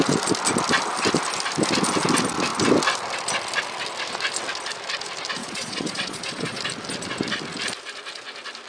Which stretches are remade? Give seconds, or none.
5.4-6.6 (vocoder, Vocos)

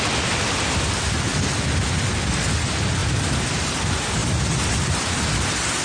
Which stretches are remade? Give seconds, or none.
none

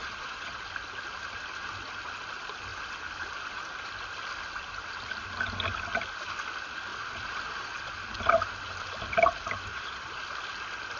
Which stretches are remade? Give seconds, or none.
0.0-0.6 (vocoder, Vocos); 6.9-7.9; 9.7-10.2